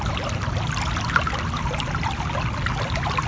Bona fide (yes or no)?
yes